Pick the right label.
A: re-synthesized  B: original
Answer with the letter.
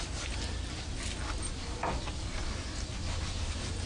B